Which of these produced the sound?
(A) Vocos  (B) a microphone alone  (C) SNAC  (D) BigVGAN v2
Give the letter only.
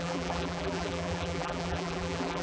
D